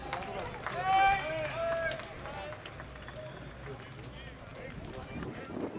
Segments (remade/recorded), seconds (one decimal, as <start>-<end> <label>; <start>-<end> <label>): 0.0-4.5 recorded; 4.5-5.2 remade; 5.2-5.8 recorded